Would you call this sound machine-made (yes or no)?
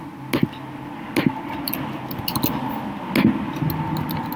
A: no